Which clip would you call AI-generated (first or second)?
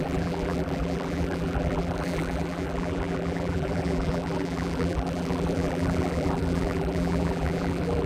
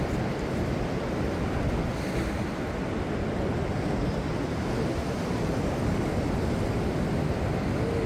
first